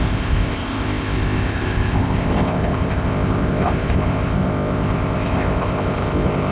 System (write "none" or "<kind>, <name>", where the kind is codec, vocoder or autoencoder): codec, ZipCodec